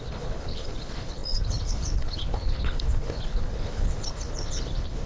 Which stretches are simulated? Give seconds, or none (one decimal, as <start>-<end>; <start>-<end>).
0.0-5.1